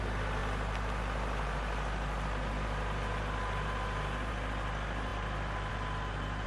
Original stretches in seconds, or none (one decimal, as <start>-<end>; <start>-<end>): 0.0-6.5